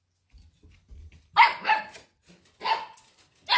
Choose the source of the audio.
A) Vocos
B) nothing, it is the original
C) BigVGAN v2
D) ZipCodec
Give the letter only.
B